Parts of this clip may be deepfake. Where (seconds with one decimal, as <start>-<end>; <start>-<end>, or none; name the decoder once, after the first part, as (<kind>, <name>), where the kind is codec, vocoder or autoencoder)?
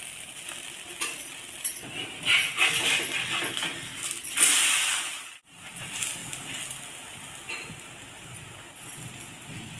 none